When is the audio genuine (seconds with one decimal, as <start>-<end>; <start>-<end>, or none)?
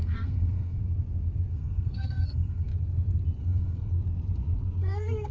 0.8-1.5; 2.7-3.4; 3.9-4.8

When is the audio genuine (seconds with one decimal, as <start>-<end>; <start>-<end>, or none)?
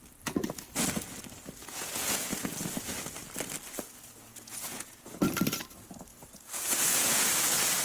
0.0-1.6; 2.5-4.3; 5.2-6.1; 7.3-7.8